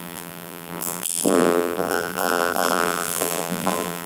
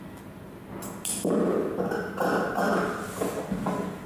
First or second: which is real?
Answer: second